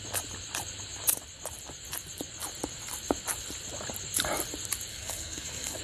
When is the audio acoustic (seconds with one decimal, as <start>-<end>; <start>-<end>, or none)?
0.0-4.9